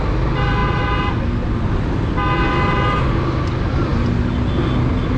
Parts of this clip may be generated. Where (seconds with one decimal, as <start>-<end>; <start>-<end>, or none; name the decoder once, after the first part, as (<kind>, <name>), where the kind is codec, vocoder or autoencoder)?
none